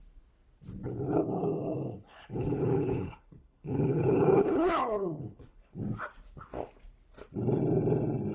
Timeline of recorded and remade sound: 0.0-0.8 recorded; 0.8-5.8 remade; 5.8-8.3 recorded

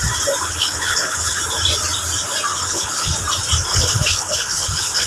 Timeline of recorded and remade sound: 0.0-0.4 recorded; 0.4-1.4 remade; 1.4-2.5 recorded; 2.5-3.1 remade; 3.1-3.7 recorded; 3.7-5.1 remade

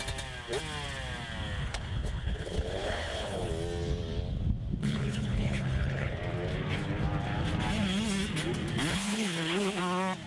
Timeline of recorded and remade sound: 0.0-1.6 recorded; 1.6-3.5 remade; 3.5-4.8 recorded; 4.8-6.2 remade; 6.2-8.9 recorded; 8.9-9.8 remade; 9.8-10.3 recorded